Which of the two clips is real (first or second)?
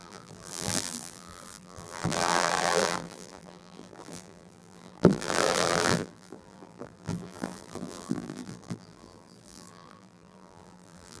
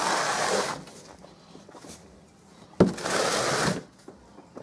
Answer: second